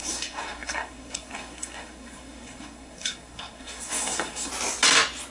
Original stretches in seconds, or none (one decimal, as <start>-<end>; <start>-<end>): 4.5-5.3